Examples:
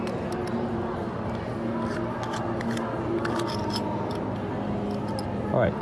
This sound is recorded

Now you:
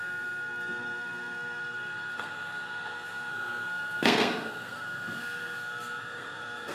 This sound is remade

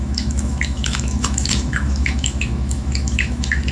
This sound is remade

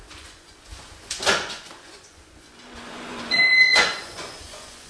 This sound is remade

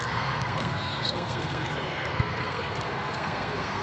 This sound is remade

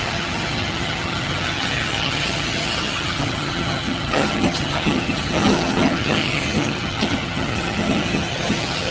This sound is remade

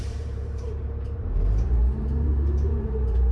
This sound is remade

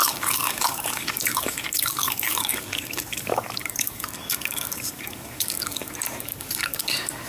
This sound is remade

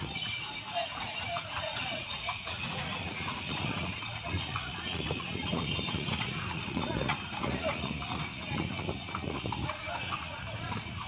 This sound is remade